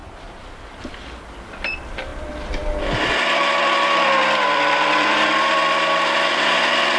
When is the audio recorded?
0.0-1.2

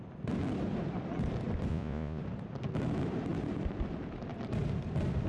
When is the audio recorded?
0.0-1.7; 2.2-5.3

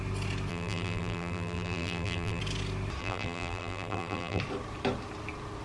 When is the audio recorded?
0.0-0.5; 2.4-3.0; 4.4-5.6